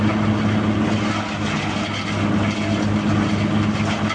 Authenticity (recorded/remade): recorded